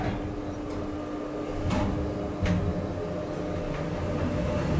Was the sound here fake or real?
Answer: real